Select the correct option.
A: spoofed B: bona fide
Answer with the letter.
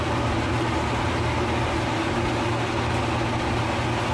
B